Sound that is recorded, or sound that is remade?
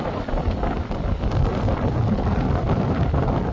recorded